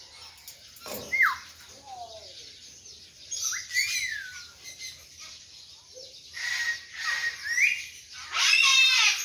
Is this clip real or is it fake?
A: real